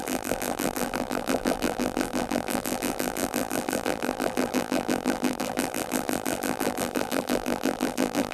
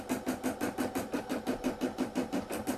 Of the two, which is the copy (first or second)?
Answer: first